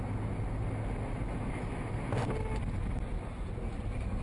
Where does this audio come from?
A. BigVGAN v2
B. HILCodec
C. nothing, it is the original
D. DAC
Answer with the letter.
C